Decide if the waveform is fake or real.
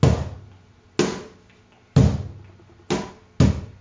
real